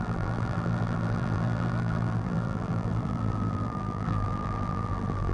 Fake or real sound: fake